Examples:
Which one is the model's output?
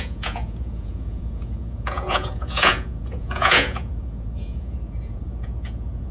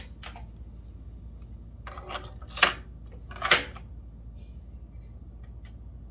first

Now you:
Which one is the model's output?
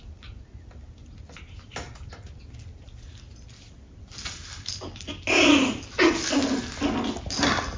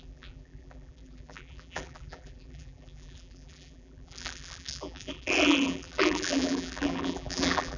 second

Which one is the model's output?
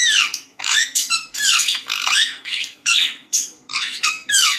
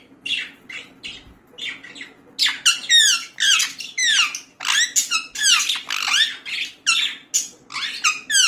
first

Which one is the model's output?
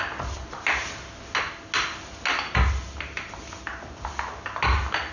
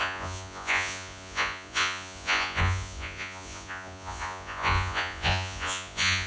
second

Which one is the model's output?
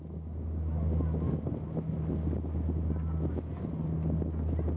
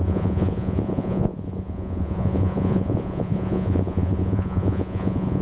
second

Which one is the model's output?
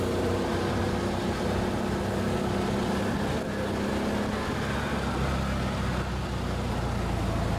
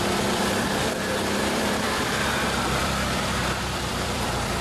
second